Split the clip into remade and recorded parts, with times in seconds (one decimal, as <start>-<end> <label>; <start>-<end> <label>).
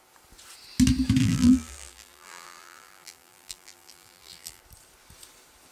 0.0-1.2 recorded; 1.2-4.6 remade; 4.6-5.7 recorded